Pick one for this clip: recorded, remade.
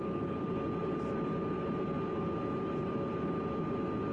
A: recorded